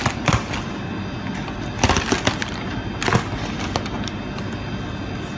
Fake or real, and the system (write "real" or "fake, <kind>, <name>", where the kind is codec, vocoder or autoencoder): real